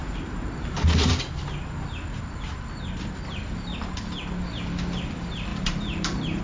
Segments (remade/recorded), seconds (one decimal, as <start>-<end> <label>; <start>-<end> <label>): 0.0-1.1 remade; 1.1-5.5 recorded; 5.5-6.4 remade